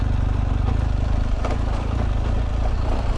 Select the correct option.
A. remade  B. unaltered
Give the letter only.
B